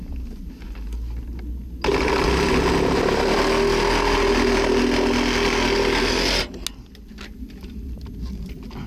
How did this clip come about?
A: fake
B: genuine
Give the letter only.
B